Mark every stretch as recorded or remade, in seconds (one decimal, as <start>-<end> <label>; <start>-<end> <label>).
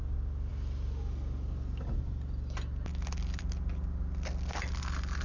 0.0-5.2 recorded